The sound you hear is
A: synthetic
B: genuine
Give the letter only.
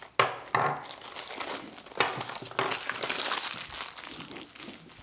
B